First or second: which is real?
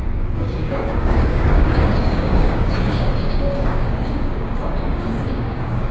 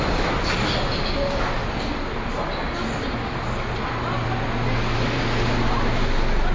second